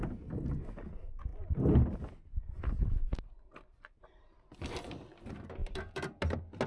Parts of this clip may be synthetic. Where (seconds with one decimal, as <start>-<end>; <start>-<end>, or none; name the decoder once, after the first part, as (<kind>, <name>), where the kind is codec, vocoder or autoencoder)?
1.3-4.0 (vocoder, BigVGAN v2); 5.6-6.2